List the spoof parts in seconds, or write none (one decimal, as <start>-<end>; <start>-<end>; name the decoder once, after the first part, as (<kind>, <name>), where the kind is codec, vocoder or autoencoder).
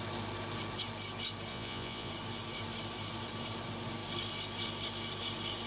1.5-2.1 (vocoder, Vocos)